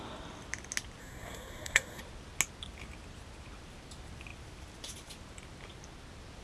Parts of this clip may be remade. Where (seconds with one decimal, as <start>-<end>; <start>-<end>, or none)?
1.0-2.0